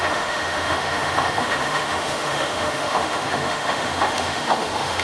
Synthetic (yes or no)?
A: yes